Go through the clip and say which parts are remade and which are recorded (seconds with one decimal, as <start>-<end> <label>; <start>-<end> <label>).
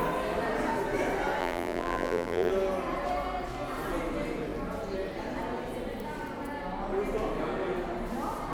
0.0-1.4 recorded; 1.4-2.5 remade; 2.5-8.5 recorded